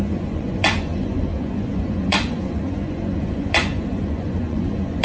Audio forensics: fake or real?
fake